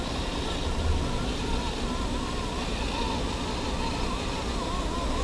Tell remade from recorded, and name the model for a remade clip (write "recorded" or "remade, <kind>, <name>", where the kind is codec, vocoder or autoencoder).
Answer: recorded